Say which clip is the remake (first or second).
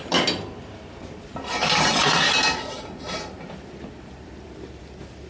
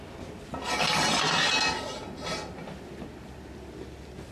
first